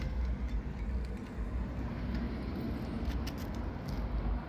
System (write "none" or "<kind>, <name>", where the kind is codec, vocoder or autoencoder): none